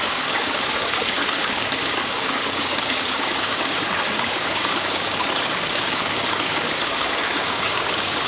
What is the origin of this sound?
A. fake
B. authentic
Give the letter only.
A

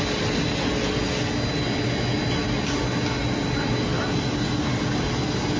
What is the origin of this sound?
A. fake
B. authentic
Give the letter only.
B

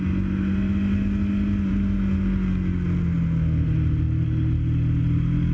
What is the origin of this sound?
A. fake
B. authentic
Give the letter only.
B